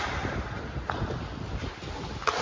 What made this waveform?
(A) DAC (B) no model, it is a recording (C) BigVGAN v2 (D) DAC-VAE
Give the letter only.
B